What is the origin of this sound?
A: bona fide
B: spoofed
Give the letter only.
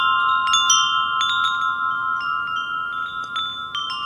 A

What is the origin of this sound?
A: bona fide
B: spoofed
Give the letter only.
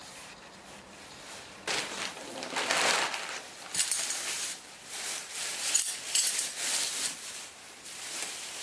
B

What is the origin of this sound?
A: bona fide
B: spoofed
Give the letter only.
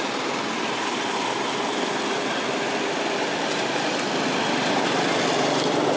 A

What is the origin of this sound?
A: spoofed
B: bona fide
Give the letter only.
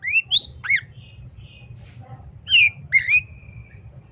B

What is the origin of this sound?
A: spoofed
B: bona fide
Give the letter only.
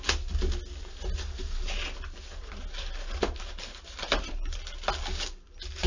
B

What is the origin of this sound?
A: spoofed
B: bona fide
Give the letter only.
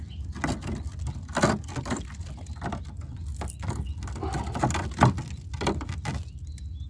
B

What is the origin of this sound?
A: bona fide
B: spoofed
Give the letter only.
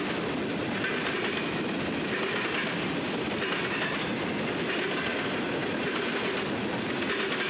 A